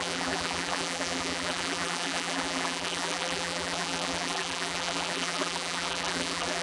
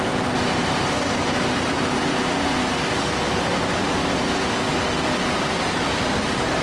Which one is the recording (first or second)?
second